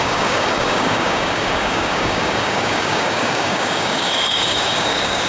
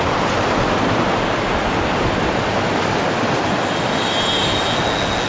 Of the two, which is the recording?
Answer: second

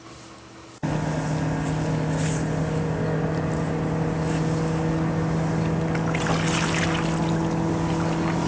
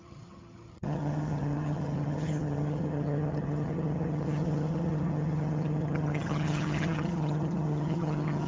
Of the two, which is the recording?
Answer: first